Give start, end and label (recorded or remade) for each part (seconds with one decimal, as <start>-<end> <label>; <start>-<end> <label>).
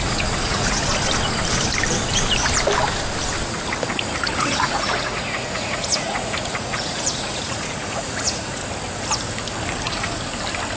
0.0-0.8 remade; 0.8-4.4 recorded; 4.4-8.6 remade; 8.6-10.8 recorded